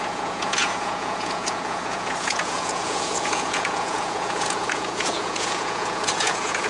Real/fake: fake